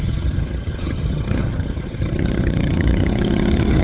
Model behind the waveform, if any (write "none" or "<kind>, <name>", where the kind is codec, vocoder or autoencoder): vocoder, HiFi-GAN